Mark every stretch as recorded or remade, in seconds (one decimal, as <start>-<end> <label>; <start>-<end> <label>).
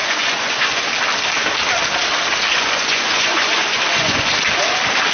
0.0-0.8 remade; 0.8-2.5 recorded; 2.5-4.3 remade; 4.3-5.1 recorded